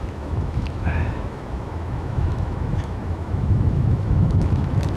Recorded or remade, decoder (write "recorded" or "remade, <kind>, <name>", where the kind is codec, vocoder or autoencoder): remade, autoencoder, DAC-VAE